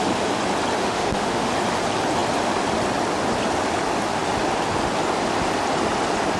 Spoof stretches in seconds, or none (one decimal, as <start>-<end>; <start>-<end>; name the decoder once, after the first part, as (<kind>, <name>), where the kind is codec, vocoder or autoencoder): 0.8-1.5 (autoencoder, DAC-VAE)